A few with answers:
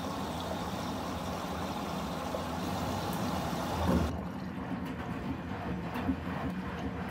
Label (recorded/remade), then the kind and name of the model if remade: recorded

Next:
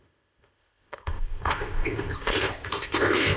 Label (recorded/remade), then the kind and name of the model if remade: remade, codec, ZipCodec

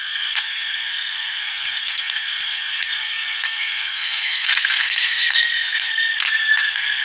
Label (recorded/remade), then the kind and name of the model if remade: remade, codec, SNAC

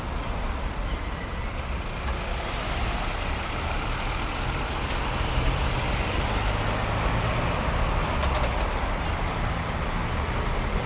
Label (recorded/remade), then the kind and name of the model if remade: recorded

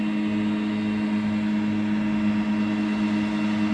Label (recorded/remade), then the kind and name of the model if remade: recorded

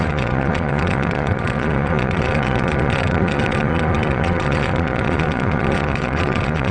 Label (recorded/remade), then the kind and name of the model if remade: remade, vocoder, Vocos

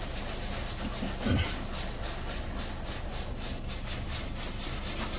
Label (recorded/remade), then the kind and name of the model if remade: recorded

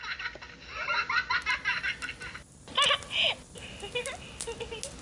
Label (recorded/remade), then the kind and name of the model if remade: recorded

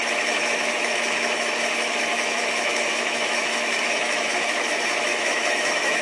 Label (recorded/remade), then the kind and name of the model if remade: remade, autoencoder, DAC-VAE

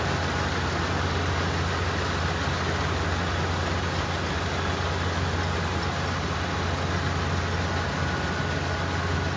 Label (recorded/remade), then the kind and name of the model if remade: recorded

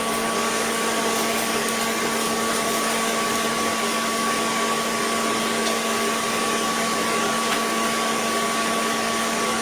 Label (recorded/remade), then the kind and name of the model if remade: remade, codec, DAC